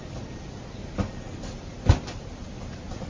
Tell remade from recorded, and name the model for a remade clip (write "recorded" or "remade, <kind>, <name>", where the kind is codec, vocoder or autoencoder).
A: remade, vocoder, BigVGAN v2